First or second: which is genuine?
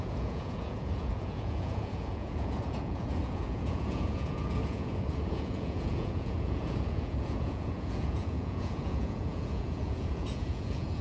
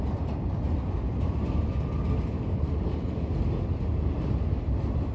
second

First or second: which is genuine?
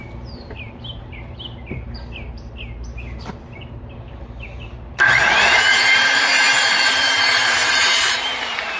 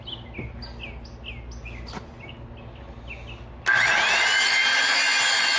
second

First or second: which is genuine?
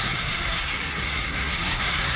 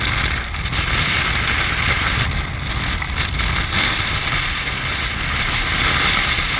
second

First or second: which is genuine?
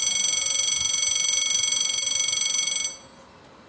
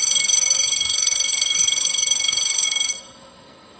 first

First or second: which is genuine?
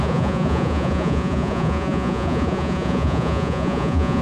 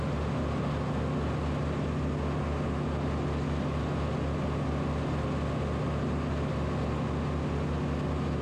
second